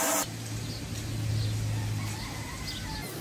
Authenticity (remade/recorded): recorded